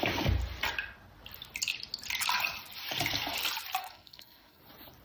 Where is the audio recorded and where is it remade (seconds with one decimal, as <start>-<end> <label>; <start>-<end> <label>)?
0.0-3.8 recorded; 3.8-4.6 remade; 4.6-5.0 recorded